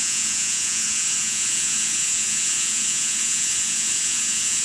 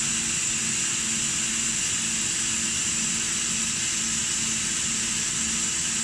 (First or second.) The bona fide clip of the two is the second